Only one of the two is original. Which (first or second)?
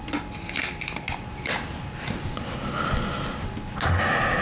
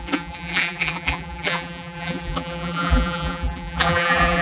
first